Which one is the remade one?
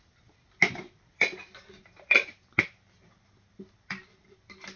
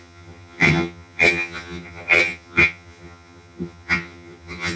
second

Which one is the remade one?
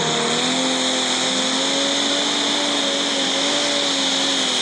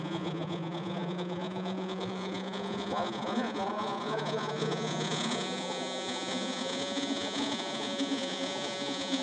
second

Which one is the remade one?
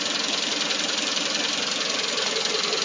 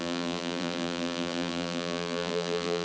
second